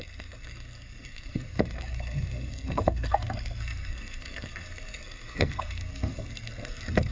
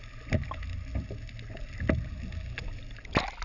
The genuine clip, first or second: second